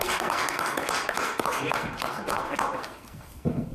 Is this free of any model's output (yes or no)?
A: no